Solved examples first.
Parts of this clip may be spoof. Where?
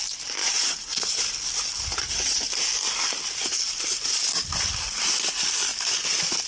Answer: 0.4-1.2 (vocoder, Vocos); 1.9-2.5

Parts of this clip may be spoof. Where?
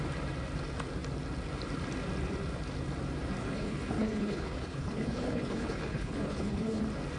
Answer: 3.4-6.8 (codec, HILCodec)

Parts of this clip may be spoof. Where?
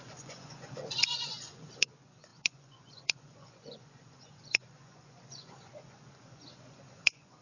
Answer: 0.0-7.4 (vocoder, Vocos)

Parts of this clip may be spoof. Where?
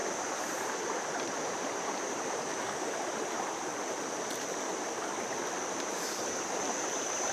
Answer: 0.0-3.7 (vocoder, BigVGAN v2); 5.7-7.3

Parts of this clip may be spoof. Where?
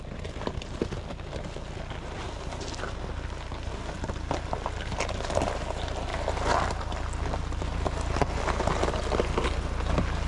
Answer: none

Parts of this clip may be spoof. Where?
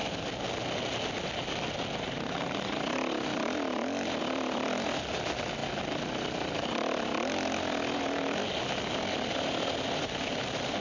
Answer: none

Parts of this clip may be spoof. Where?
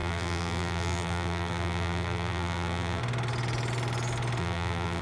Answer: 0.0-3.0 (vocoder, BigVGAN v2); 4.4-5.0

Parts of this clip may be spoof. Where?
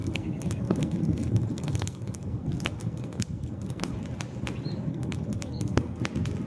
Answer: 0.0-3.9 (codec, SNAC); 4.9-6.0